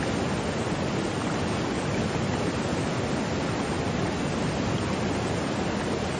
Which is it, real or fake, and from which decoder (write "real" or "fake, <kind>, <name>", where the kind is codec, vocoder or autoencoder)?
real